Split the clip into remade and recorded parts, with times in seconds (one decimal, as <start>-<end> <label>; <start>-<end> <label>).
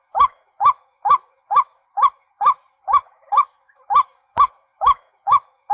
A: 0.0-5.7 remade